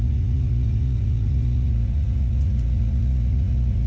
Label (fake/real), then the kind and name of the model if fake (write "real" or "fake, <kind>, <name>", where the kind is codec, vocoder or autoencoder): fake, vocoder, Vocos